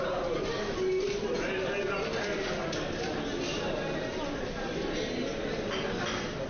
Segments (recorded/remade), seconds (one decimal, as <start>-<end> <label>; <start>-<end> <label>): 0.0-6.5 recorded